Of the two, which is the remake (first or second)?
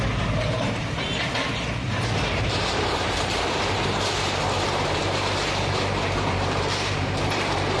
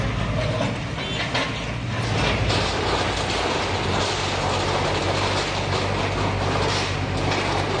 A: first